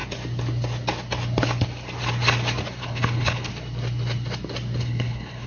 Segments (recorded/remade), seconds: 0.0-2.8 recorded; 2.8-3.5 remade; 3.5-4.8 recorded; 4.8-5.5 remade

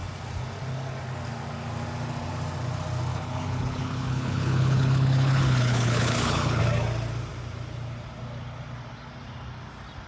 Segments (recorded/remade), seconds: 0.0-3.1 recorded; 3.1-6.6 remade; 6.6-10.1 recorded

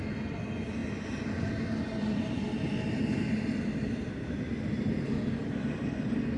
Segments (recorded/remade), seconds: 0.0-6.4 recorded